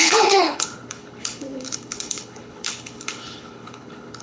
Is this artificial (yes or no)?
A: yes